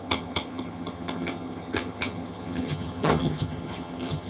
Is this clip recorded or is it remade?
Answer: remade